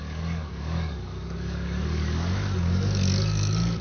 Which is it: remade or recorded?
remade